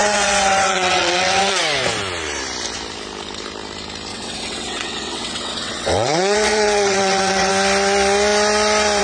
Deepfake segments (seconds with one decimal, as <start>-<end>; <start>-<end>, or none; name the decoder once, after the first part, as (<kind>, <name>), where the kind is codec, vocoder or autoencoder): 0.0-1.6 (vocoder, WaveNeXt); 4.1-7.5

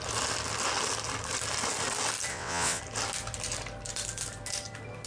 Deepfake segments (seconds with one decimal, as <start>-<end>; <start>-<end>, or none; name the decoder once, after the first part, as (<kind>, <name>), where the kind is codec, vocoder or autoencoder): 2.3-2.8 (vocoder, WaveNeXt)

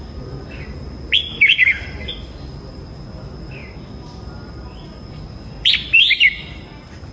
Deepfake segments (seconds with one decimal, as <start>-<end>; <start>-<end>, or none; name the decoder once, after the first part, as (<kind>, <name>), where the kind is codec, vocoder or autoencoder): none

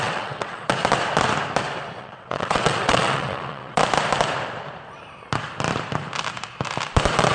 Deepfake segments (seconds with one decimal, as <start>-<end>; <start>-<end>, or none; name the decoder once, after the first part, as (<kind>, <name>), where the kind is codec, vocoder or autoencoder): 0.0-0.8 (vocoder, WaveNeXt); 2.0-3.8

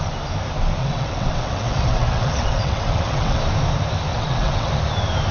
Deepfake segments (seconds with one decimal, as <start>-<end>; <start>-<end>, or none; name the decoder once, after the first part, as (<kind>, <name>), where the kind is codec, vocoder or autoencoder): 0.8-3.4 (vocoder, WaveNeXt); 4.1-4.7

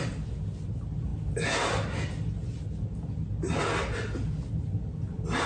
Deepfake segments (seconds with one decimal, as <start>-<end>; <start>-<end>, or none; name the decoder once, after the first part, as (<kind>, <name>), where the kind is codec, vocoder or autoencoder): none

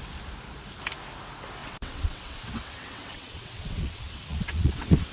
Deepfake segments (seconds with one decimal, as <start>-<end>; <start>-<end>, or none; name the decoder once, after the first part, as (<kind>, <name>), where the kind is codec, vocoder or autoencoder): 1.6-5.1 (vocoder, WaveNeXt)